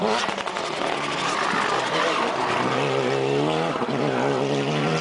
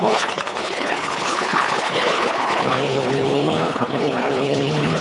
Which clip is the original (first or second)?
first